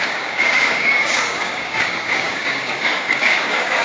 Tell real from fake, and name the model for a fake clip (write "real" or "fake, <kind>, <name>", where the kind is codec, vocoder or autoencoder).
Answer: fake, codec, DAC